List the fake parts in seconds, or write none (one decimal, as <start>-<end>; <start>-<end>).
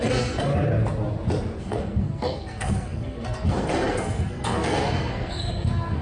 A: 0.0-0.5; 1.6-6.0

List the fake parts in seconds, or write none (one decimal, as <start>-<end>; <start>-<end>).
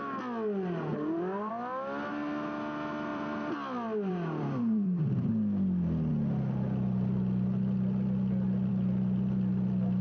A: 0.9-1.5; 3.1-5.3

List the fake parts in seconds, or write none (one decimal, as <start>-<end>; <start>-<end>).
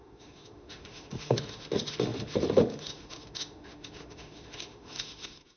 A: 0.0-5.6